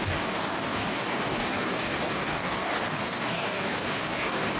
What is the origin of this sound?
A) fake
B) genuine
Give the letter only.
A